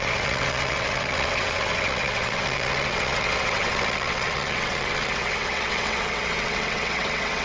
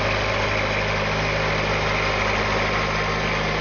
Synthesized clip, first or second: first